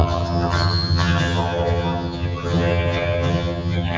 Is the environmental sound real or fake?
fake